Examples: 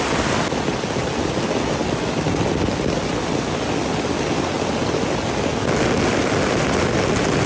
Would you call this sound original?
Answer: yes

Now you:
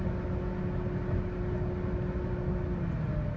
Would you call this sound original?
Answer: yes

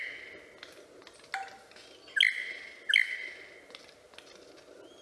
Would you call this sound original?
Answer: yes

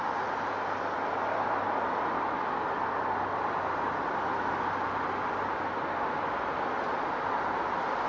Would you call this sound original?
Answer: yes